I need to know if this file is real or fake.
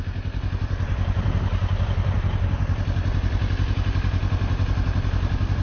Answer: real